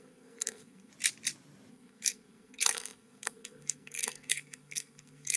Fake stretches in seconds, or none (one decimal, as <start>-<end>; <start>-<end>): 0.0-0.9; 1.7-5.4